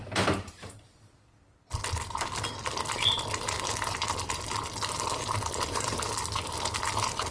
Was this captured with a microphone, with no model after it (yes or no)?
yes